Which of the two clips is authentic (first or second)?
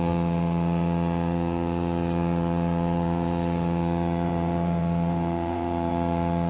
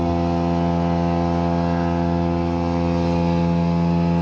second